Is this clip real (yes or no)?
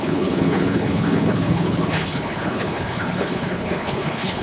no